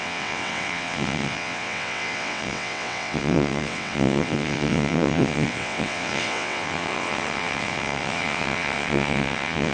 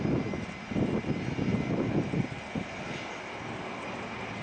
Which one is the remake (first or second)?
first